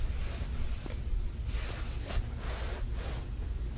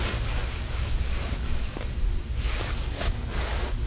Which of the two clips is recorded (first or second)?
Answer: first